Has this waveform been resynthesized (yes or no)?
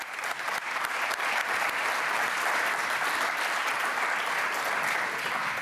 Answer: no